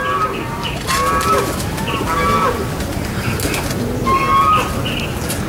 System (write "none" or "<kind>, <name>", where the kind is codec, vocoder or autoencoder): none